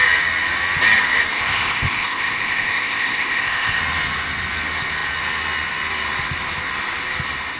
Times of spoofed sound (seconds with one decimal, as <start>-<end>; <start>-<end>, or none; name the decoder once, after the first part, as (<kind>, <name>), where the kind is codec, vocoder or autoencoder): 1.3-3.8 (codec, ZipCodec)